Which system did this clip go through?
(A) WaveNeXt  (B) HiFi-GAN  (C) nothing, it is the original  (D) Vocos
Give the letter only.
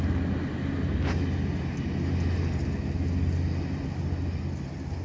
C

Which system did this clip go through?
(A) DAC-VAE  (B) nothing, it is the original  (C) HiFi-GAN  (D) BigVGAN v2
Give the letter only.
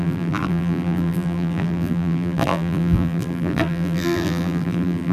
D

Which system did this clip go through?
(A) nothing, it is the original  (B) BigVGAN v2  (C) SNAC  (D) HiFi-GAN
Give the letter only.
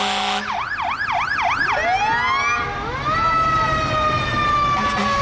A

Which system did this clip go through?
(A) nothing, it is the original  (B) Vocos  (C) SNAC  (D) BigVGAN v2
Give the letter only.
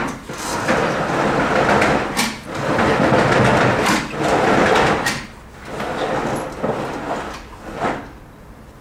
A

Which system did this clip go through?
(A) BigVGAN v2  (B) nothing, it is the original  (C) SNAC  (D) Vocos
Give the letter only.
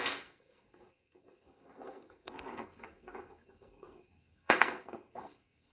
C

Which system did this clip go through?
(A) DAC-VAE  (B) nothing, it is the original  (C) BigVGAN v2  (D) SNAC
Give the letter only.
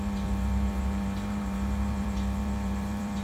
C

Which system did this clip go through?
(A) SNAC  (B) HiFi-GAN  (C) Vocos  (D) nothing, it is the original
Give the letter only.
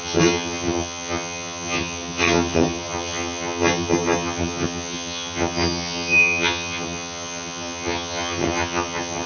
B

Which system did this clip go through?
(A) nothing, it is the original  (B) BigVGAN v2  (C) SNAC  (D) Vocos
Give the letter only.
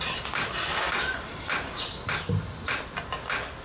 A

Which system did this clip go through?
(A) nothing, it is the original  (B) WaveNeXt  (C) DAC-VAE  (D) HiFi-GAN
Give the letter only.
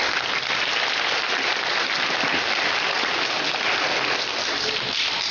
A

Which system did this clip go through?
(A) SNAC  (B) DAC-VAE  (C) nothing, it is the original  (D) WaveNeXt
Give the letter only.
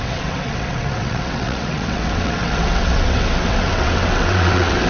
D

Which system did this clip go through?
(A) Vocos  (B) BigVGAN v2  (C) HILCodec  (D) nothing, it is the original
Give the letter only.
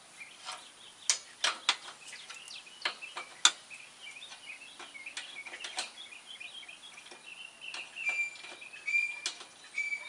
D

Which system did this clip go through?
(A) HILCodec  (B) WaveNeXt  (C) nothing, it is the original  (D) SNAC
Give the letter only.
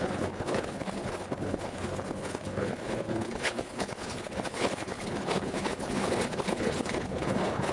A